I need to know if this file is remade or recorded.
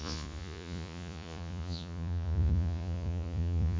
remade